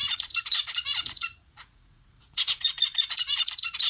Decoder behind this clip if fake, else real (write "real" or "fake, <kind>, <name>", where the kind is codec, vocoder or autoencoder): fake, vocoder, Vocos